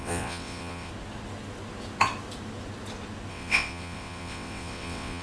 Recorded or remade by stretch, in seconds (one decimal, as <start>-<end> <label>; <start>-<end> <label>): 0.0-0.9 remade; 0.9-3.3 recorded; 3.3-5.2 remade